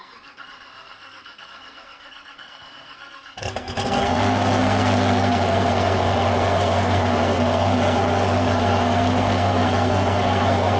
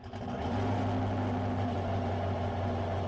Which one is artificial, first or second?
first